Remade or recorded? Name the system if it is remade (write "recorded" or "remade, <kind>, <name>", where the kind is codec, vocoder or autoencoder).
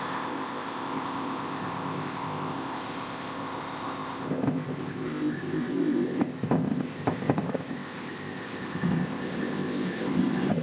remade, codec, ZipCodec